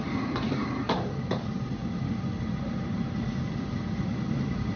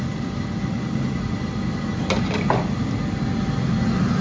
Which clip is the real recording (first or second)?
second